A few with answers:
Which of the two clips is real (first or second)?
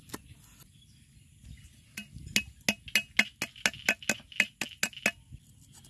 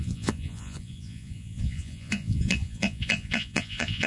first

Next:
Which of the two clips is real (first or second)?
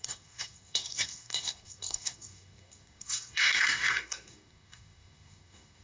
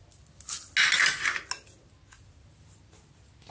second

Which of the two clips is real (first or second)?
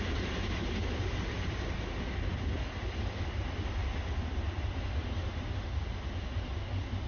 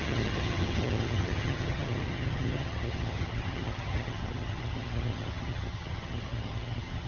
first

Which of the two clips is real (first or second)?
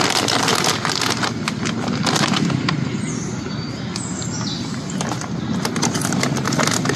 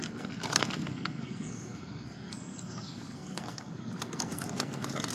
first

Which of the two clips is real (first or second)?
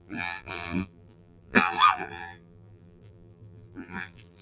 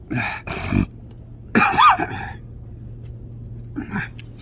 second